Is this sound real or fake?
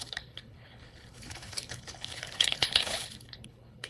fake